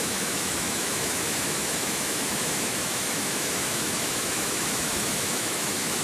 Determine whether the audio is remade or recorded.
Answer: remade